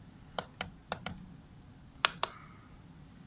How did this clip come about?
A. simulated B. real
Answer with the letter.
B